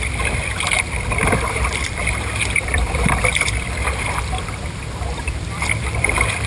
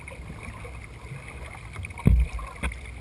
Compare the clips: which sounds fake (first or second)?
first